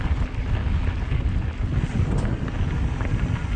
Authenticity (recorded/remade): recorded